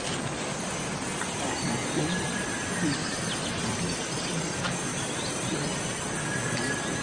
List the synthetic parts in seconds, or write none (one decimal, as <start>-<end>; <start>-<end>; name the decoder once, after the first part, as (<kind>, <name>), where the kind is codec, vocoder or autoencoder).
3.0-4.4 (vocoder, BigVGAN v2); 4.9-6.1